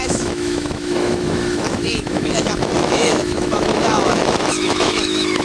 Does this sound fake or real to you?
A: fake